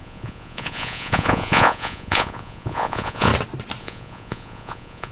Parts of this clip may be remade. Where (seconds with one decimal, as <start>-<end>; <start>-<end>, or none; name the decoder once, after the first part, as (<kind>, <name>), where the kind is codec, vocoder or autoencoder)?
0.0-3.3 (vocoder, Vocos); 3.8-5.1